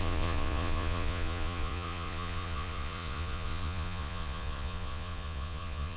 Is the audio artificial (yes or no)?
yes